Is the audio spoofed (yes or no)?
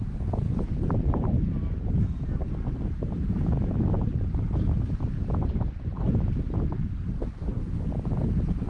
no